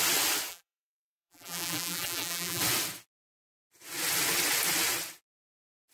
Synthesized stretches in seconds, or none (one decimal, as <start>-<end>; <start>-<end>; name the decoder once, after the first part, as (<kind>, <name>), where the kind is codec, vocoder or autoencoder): 0.5-2.6 (vocoder, BigVGAN v2)